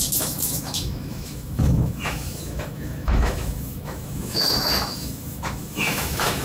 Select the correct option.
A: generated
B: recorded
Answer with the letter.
A